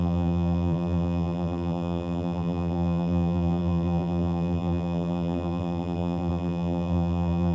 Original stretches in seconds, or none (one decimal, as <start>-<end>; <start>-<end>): none